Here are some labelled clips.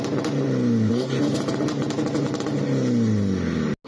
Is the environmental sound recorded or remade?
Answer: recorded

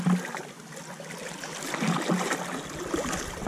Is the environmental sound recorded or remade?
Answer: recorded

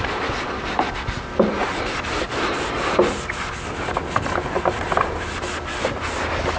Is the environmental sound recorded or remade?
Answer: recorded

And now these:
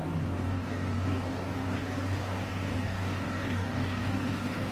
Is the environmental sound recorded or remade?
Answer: remade